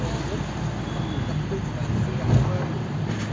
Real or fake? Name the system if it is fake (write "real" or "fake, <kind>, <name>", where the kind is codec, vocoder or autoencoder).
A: real